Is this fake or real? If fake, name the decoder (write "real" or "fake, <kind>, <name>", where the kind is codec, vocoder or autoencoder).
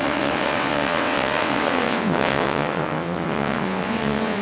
fake, vocoder, WaveNeXt